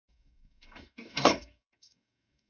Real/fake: fake